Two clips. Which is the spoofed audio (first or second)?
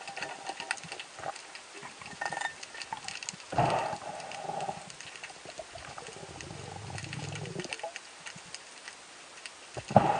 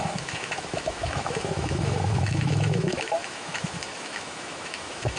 second